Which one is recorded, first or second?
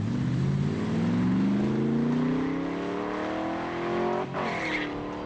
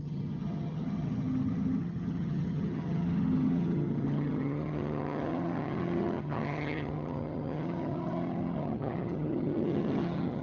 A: first